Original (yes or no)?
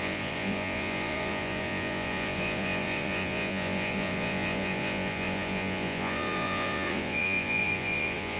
no